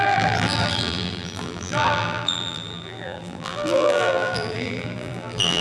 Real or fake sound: fake